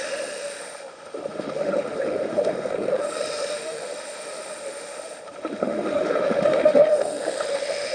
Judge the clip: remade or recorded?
remade